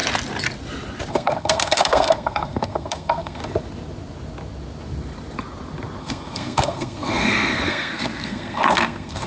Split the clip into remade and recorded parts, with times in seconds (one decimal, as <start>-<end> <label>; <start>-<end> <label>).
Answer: 0.0-1.1 recorded; 1.1-3.4 remade; 3.4-6.0 recorded; 6.0-9.3 remade